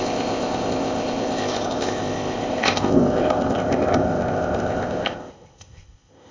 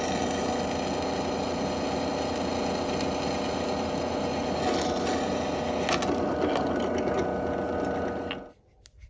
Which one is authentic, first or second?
second